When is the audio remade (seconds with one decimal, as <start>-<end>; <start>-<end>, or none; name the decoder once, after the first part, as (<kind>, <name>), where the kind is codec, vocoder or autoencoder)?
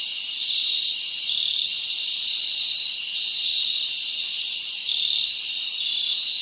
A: none